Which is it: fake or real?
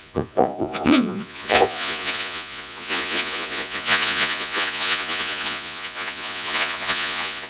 fake